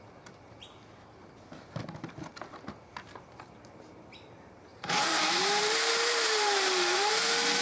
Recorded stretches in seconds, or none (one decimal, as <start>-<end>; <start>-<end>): 0.0-4.7; 7.1-7.6